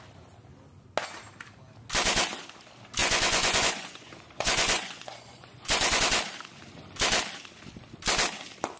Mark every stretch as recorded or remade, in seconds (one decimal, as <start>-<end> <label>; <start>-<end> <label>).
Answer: 0.0-3.0 recorded; 3.0-6.0 remade; 6.0-8.8 recorded